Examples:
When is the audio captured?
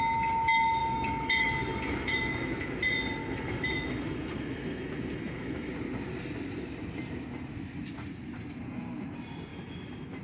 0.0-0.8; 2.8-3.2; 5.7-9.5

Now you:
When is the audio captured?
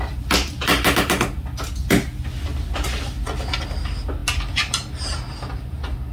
0.0-6.1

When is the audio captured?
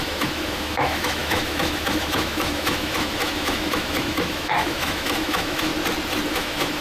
5.7-6.3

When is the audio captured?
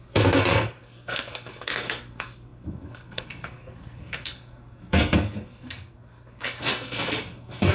none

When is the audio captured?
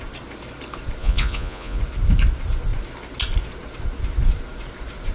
0.0-1.0; 1.8-5.1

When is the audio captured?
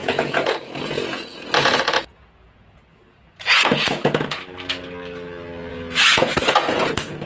4.4-5.7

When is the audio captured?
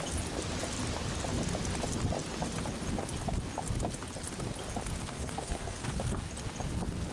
0.0-5.0; 6.3-7.1